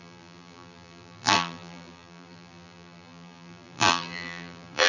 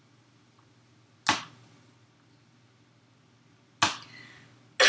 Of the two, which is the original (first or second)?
second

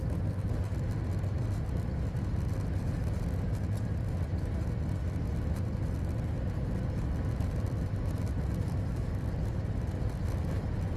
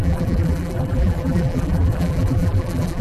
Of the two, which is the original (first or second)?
first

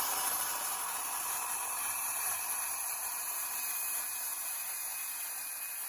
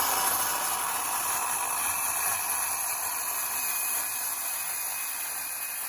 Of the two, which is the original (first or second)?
second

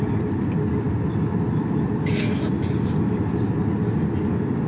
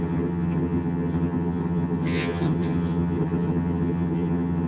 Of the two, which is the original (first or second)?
first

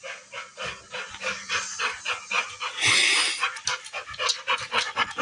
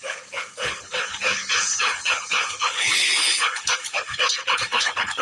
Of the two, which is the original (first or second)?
first